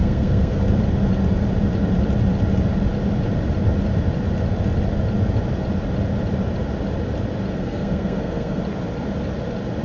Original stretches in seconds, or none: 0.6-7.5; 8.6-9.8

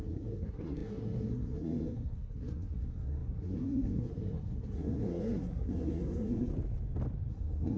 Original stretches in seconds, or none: 6.5-7.3